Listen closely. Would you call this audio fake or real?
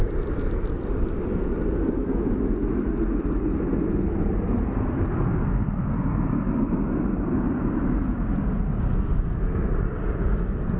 real